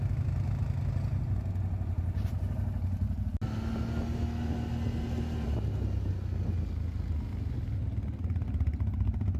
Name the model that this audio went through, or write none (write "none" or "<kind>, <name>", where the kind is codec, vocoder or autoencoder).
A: none